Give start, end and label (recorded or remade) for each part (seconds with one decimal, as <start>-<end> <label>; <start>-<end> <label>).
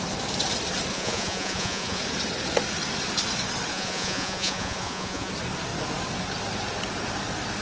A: 0.0-0.9 recorded; 0.9-2.0 remade; 2.0-3.7 recorded; 3.7-5.3 remade; 5.3-7.6 recorded